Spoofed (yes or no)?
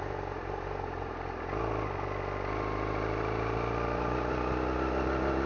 no